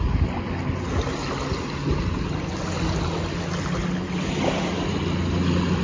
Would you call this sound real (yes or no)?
yes